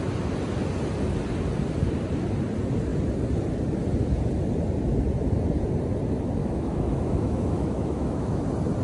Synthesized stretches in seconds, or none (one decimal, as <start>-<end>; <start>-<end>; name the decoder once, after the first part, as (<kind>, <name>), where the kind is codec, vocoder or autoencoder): 6.4-8.4 (autoencoder, DAC-VAE)